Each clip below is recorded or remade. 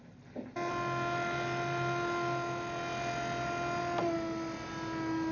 recorded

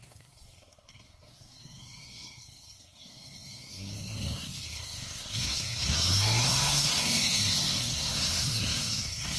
remade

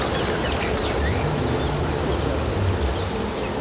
recorded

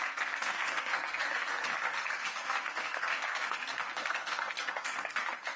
remade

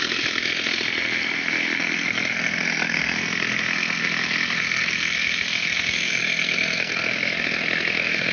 remade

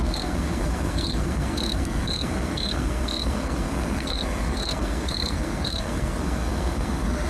remade